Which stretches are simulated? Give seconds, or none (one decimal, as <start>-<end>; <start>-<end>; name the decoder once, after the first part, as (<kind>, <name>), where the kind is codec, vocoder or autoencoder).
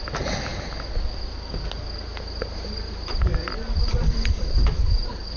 none